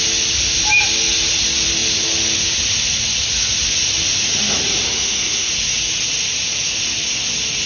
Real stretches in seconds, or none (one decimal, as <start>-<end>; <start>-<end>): 0.0-4.8; 5.5-7.7